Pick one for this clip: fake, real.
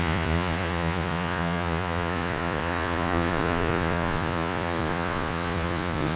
fake